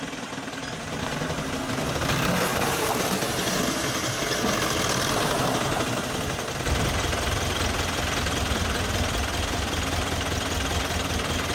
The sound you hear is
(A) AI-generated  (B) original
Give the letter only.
B